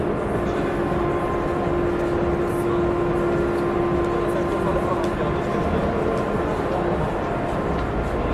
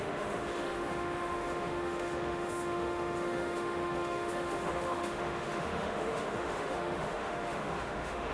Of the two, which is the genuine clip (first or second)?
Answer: first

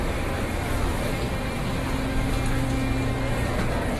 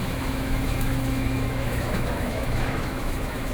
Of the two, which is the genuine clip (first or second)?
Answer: first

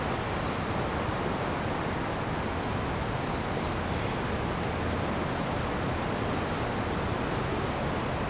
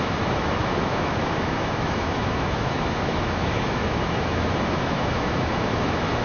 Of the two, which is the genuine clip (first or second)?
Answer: first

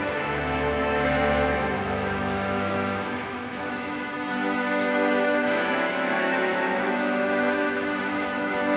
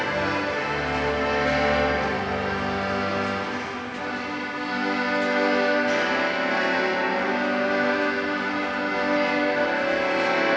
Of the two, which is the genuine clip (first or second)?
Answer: second